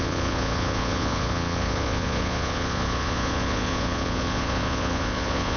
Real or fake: fake